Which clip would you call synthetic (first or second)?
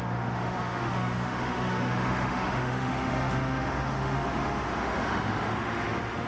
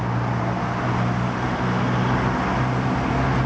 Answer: first